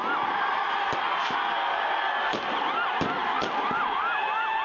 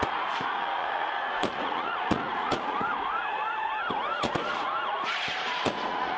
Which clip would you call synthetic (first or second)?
second